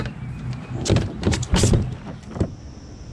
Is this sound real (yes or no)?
yes